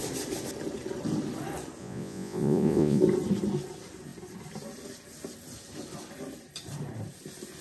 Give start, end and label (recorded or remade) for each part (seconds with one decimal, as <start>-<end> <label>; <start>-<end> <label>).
0.0-1.8 recorded; 1.8-3.0 remade; 3.0-7.6 recorded